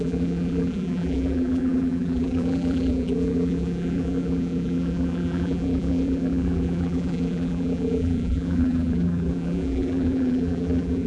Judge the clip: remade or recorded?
remade